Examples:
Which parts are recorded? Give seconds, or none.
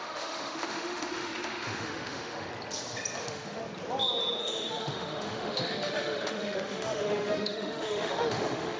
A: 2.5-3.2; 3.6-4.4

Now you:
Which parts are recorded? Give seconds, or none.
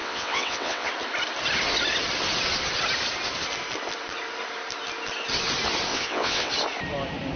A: 0.9-5.9; 6.5-7.4